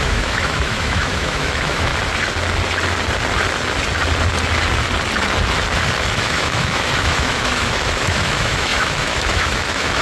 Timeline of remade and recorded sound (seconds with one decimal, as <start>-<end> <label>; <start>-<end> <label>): 0.0-1.9 remade; 1.9-6.1 recorded; 6.1-10.0 remade